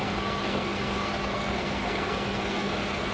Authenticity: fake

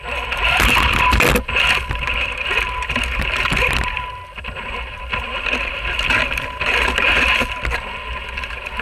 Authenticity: real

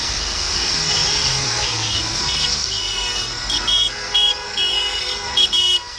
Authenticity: fake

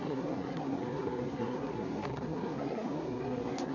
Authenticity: fake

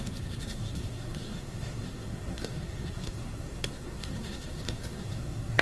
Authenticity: fake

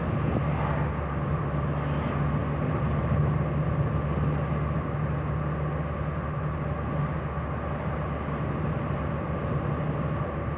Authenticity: real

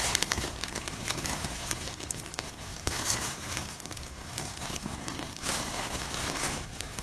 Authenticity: fake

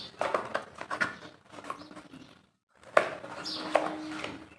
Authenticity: real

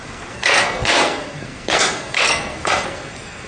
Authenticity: fake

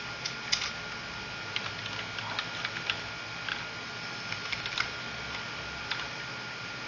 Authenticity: real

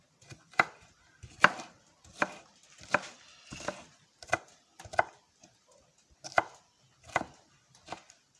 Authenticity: real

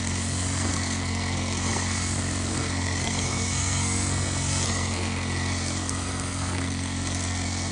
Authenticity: fake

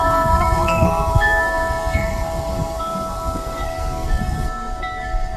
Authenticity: fake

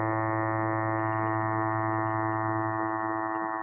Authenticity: real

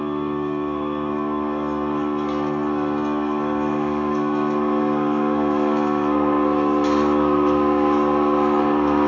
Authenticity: fake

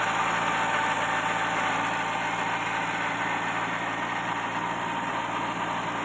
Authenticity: real